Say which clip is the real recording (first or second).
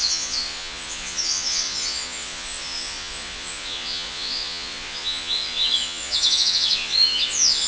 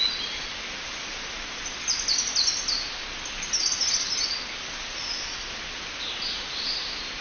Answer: second